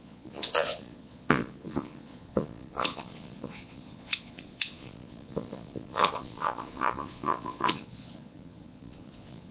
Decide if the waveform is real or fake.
fake